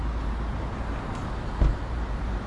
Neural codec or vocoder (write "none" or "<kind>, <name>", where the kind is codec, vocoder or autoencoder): none